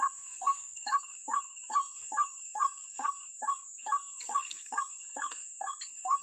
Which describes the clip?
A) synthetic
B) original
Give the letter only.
A